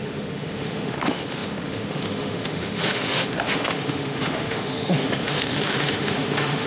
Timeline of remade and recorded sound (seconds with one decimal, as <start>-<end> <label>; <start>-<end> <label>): 0.0-6.7 remade